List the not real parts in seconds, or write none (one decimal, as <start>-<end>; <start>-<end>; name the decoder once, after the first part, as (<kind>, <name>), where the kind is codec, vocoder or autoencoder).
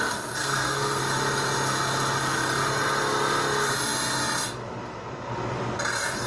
0.4-1.0 (codec, SNAC)